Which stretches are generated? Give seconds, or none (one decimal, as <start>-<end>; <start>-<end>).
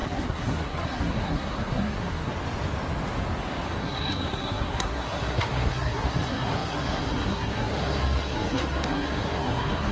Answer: 0.0-2.3; 3.8-9.9